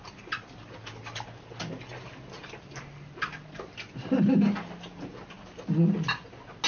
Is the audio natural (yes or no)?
yes